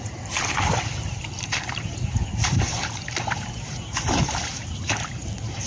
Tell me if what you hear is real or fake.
fake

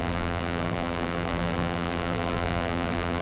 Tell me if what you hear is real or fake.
fake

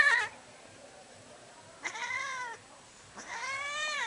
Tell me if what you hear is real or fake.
fake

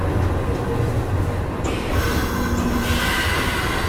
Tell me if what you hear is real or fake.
real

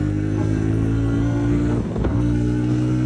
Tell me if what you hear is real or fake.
fake